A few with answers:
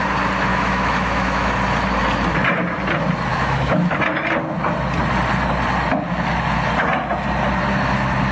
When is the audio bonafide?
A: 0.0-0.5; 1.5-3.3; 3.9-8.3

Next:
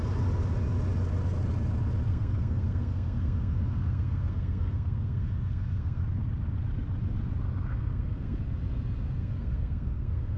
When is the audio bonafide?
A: 0.0-2.1; 6.0-7.7; 8.4-9.2

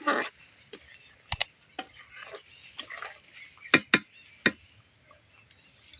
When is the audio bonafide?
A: 0.0-6.0

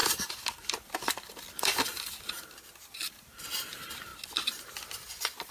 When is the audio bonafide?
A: 2.4-4.1; 4.6-5.5

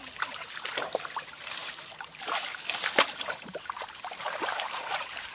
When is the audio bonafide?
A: 1.6-4.2

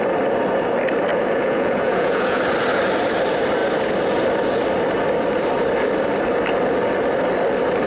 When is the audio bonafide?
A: 0.0-1.1; 2.4-7.9